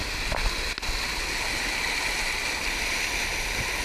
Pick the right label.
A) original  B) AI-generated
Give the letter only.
A